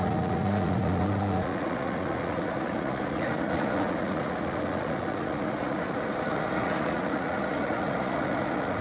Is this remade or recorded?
remade